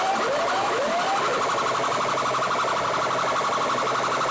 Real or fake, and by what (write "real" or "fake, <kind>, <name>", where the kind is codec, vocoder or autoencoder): real